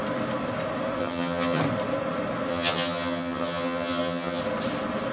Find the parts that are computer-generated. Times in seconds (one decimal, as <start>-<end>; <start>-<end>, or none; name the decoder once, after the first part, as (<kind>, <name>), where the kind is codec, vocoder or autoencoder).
1.0-1.6 (vocoder, HiFi-GAN); 2.5-4.4

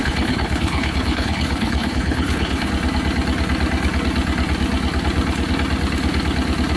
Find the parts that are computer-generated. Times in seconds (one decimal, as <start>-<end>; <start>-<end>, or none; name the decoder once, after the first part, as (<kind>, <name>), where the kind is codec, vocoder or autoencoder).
0.0-2.7 (codec, HILCodec)